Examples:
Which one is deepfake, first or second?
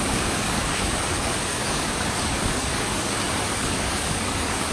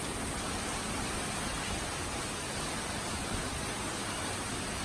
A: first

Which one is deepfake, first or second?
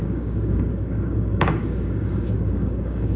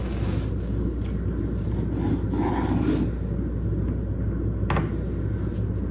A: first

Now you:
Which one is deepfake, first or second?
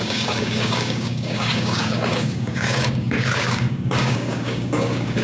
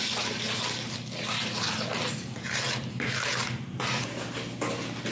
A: first